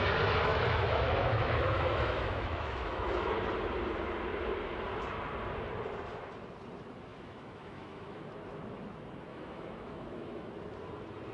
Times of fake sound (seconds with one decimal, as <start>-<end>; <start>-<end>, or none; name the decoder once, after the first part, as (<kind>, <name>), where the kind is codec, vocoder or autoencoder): 0.5-3.3 (autoencoder, DAC-VAE); 7.1-8.2; 9.3-10.5